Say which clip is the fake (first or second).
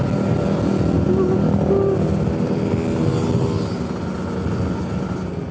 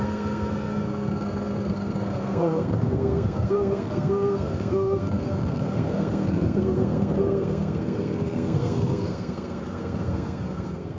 second